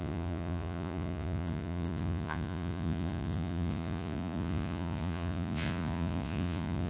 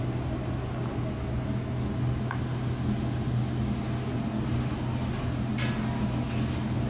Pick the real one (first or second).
second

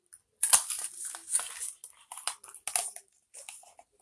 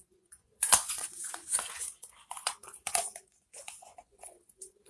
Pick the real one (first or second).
first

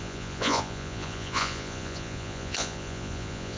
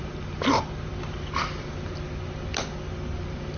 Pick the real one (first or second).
second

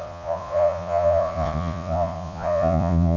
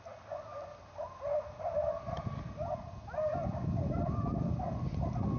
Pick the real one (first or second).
second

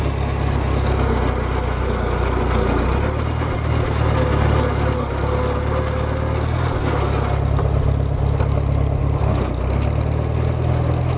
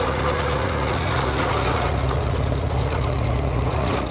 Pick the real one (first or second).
first